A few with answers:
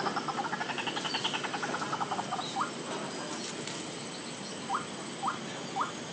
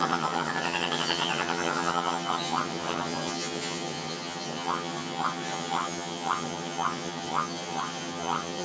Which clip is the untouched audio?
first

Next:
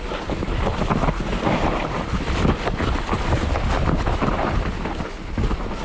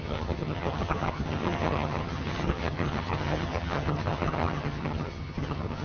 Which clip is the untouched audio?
first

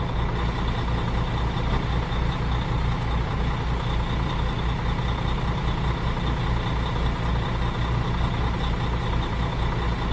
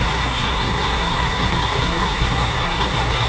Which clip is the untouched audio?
first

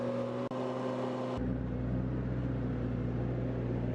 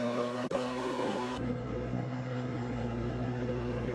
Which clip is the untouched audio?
first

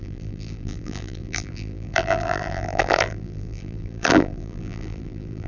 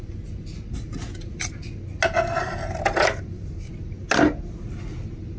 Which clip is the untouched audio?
second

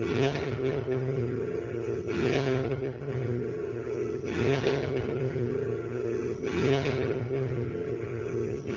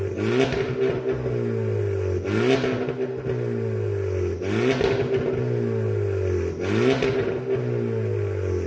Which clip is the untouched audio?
second